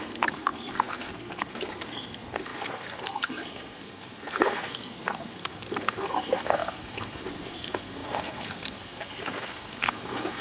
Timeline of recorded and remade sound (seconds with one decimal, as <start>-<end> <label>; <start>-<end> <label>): 0.0-10.4 remade